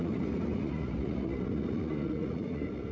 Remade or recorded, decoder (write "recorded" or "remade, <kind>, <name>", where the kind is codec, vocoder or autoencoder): remade, vocoder, Vocos